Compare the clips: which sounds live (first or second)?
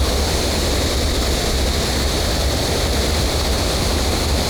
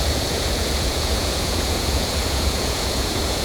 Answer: first